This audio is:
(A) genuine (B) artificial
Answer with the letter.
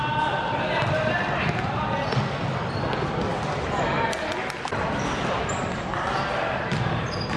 A